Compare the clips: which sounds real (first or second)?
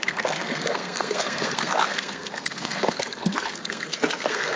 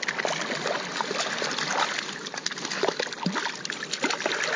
second